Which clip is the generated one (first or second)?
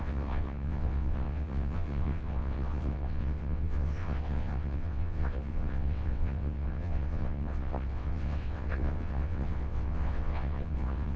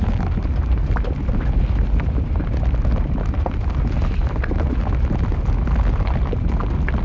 first